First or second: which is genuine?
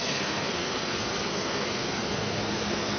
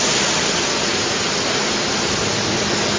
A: second